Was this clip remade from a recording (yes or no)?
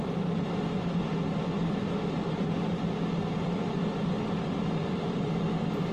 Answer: no